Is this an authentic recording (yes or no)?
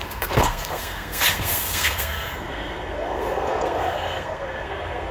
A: no